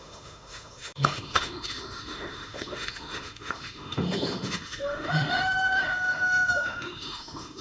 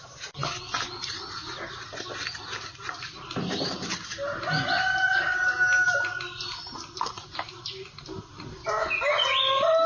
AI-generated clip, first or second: first